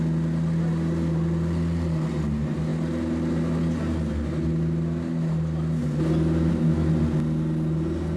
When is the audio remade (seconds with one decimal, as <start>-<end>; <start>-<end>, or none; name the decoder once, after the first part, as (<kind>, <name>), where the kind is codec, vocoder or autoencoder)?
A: none